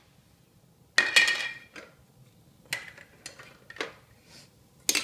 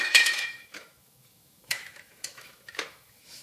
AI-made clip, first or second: second